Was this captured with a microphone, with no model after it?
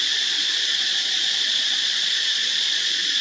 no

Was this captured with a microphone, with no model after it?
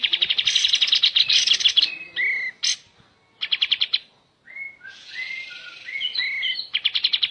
yes